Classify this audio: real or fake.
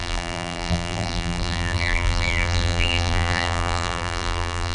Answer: fake